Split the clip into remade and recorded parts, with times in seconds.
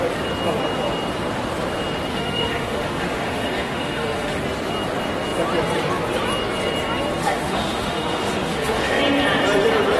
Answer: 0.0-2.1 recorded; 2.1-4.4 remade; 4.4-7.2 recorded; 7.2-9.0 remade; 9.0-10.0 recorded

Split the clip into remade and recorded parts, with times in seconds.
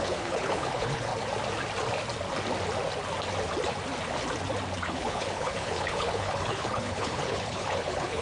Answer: 0.0-1.1 remade; 1.1-4.8 recorded; 4.8-8.2 remade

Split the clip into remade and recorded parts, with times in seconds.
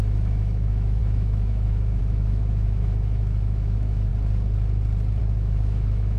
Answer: 0.0-4.1 remade; 4.1-5.2 recorded; 5.2-6.2 remade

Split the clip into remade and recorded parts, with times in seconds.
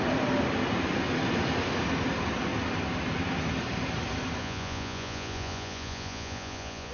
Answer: 0.0-4.4 recorded; 4.4-6.9 remade